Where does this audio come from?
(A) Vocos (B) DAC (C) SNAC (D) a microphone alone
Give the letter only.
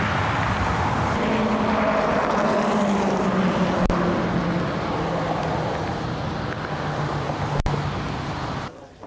D